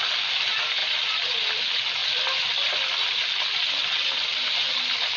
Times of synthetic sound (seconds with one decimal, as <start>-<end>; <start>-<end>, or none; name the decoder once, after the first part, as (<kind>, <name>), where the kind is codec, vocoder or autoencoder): 2.0-4.5 (vocoder, BigVGAN v2)